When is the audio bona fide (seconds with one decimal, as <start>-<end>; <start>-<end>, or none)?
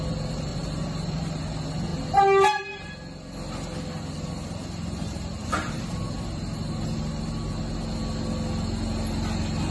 0.0-0.5; 1.4-9.7